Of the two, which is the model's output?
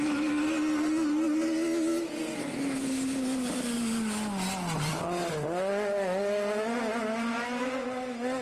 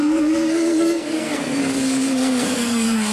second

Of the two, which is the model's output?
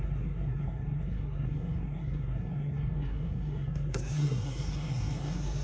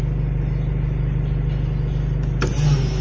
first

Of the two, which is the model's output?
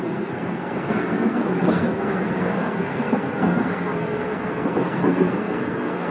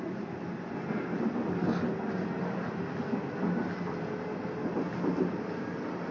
first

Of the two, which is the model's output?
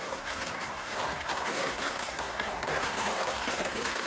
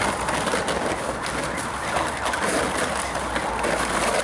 first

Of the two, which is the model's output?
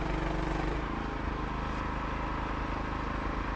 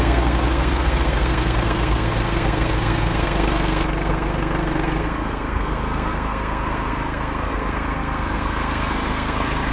second